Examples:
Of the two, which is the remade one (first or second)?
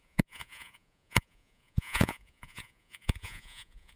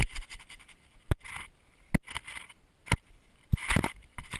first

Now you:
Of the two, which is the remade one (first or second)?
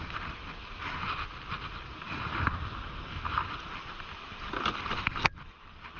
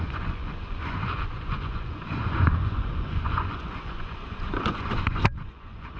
second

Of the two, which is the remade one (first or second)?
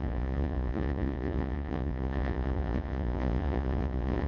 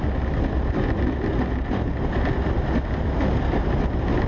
first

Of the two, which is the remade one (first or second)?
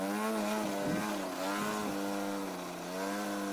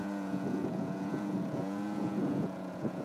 second